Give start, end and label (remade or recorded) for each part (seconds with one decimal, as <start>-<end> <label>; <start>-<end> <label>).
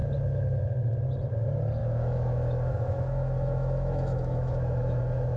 0.0-1.8 recorded; 1.8-5.0 remade; 5.0-5.4 recorded